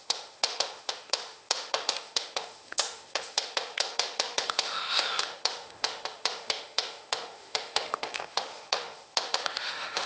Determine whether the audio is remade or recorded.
remade